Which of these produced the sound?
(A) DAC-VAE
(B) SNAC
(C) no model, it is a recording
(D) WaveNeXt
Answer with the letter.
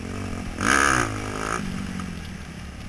C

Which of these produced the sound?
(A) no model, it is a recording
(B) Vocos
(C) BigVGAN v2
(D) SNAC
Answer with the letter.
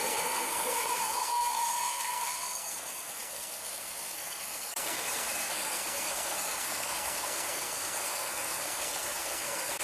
D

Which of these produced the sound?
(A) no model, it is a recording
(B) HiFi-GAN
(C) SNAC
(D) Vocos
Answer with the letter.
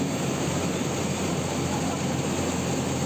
A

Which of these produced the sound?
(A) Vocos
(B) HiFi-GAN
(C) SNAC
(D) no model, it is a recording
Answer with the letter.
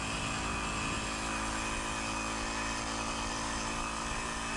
D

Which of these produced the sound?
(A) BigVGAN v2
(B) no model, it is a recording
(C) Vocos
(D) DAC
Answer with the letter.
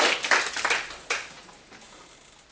B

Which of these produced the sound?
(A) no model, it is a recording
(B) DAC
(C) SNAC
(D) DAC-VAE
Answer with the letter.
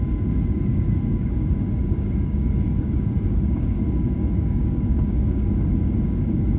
B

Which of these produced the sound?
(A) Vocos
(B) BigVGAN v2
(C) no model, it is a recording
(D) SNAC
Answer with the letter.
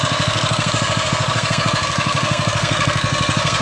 D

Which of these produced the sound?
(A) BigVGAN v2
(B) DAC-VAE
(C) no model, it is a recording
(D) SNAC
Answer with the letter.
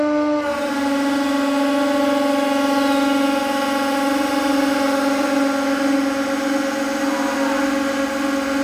C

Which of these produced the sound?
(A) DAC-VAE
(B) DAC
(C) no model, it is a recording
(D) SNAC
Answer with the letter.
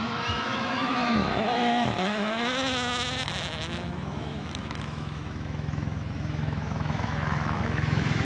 A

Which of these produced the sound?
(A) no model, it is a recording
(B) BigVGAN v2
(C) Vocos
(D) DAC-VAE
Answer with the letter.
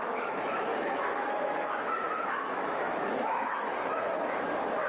D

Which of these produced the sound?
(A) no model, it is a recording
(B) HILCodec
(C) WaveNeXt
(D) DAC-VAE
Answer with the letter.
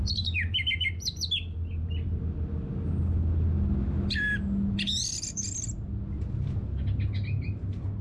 A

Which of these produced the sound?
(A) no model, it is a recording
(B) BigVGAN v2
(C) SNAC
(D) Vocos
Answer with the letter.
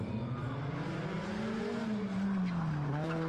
A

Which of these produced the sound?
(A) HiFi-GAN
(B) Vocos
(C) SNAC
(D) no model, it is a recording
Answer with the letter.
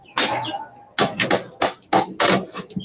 D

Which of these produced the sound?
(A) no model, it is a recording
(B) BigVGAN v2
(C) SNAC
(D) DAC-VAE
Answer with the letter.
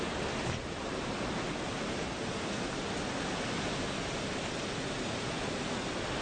A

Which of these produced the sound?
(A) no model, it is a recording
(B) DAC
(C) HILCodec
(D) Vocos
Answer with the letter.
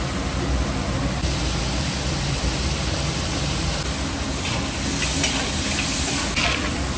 A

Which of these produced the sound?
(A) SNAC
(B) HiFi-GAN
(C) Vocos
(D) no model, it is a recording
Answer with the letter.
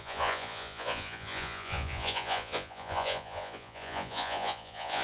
C